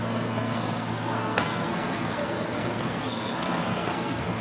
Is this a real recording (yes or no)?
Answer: no